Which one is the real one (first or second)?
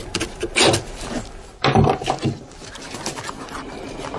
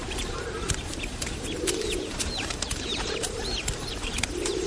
first